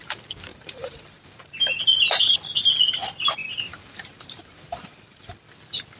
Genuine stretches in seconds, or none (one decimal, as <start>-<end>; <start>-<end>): 0.0-0.5; 1.8-3.4; 5.3-6.0